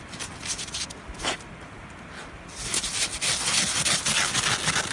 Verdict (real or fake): real